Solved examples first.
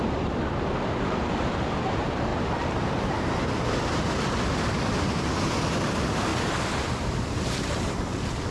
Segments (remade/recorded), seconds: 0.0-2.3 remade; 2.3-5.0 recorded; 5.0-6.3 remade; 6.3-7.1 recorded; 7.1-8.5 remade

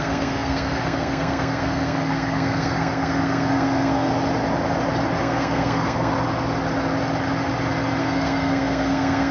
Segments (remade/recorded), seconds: 0.0-4.1 remade; 4.1-5.2 recorded; 5.2-6.1 remade; 6.1-8.0 recorded; 8.0-9.3 remade

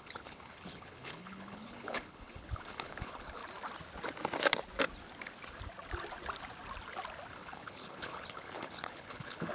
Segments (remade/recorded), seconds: 0.0-3.4 remade; 3.4-7.3 recorded; 7.3-9.5 remade

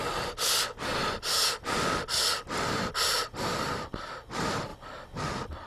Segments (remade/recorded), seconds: 0.0-5.7 recorded

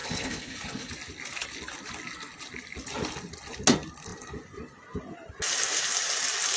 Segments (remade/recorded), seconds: 0.0-0.9 remade; 0.9-6.6 recorded

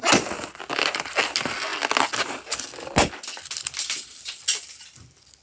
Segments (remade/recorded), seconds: 0.0-5.4 recorded